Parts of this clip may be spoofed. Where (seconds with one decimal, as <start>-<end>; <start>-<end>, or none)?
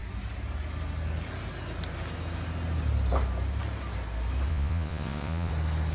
4.5-5.5